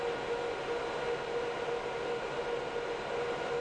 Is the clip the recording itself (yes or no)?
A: yes